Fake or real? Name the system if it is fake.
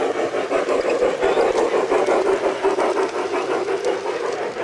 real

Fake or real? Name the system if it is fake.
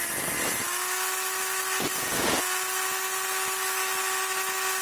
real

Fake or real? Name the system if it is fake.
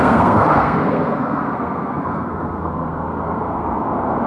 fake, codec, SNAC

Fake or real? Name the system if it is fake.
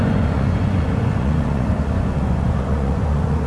fake, vocoder, Vocos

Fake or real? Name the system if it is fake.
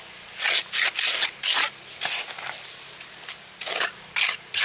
real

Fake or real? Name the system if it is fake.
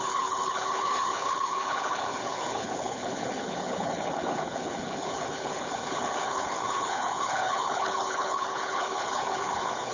fake, codec, HILCodec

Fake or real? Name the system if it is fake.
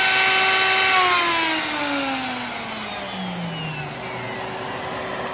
real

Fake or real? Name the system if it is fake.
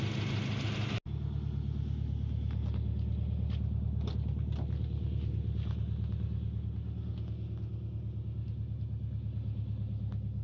real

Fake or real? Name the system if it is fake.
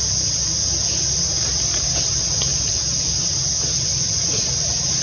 real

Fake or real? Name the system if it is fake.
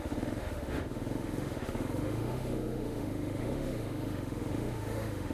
fake, autoencoder, DAC-VAE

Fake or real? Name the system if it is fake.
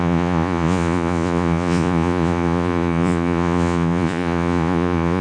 fake, vocoder, Vocos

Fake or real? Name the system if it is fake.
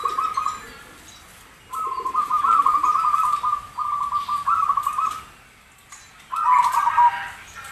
real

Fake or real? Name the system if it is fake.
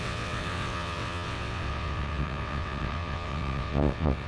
fake, vocoder, WaveNeXt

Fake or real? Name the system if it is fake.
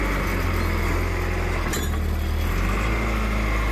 real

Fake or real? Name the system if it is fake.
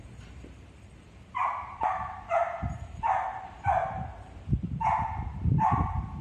fake, vocoder, BigVGAN v2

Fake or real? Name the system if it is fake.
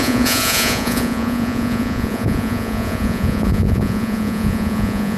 fake, vocoder, Vocos